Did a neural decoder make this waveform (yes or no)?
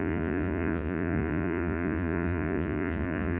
yes